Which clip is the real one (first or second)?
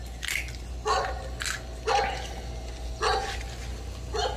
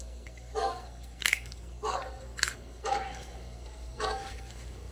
first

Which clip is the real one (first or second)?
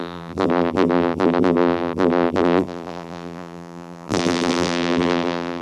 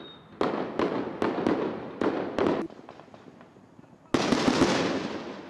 second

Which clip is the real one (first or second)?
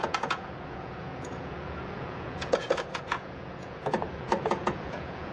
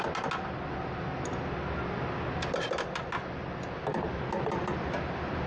second